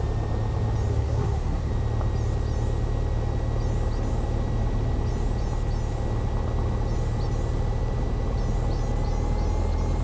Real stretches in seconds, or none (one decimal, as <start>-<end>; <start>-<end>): 0.0-0.9; 1.7-10.0